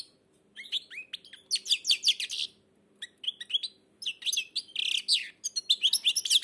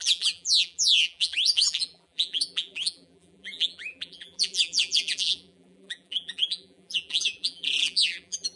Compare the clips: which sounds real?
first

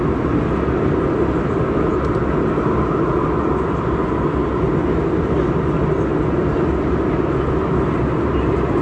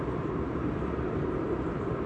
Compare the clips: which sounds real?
first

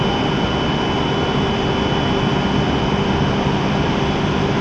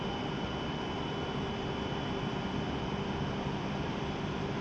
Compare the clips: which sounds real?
first